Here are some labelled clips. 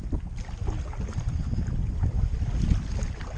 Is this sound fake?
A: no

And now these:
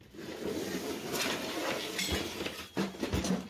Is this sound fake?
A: yes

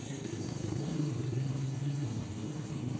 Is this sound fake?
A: yes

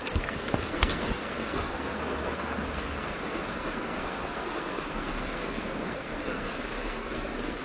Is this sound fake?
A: yes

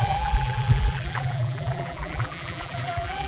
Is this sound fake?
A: yes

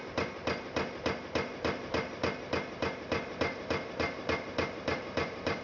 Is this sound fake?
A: yes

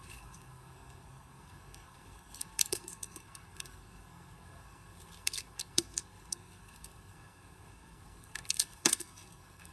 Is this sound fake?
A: yes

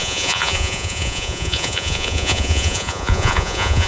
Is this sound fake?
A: yes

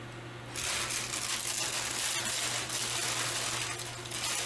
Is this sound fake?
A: no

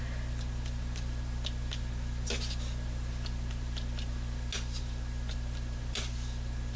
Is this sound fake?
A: no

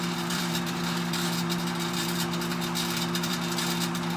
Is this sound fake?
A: yes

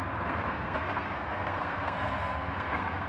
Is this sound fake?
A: yes